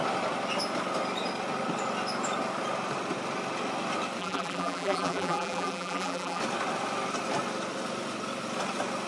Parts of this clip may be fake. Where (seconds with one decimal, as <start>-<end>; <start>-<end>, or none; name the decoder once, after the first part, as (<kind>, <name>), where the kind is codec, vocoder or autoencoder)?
4.2-6.4 (vocoder, BigVGAN v2)